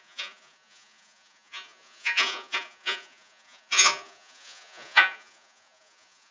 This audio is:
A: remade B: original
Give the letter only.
A